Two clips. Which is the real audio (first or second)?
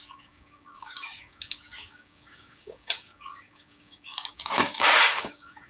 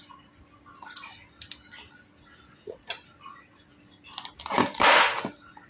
second